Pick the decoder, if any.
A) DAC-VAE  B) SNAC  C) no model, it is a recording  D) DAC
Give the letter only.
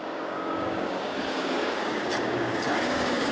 D